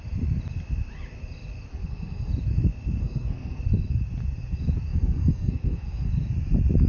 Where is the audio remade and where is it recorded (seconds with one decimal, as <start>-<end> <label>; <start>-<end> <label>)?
0.0-1.7 recorded; 1.7-2.3 remade; 2.3-3.0 recorded; 3.0-3.6 remade; 3.6-4.9 recorded; 4.9-6.1 remade; 6.1-6.9 recorded